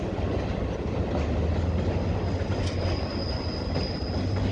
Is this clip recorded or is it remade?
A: recorded